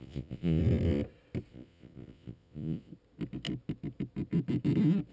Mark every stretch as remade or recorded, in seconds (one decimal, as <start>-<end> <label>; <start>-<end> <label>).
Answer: 0.0-0.6 remade; 0.6-1.5 recorded; 1.5-2.9 remade; 2.9-5.1 recorded